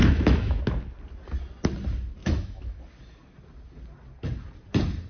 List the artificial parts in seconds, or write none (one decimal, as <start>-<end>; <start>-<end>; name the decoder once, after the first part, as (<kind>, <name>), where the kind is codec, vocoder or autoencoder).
0.0-0.6 (autoencoder, DAC-VAE); 2.2-2.8